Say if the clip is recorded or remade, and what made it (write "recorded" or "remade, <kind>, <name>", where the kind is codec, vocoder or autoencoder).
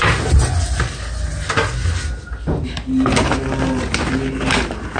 recorded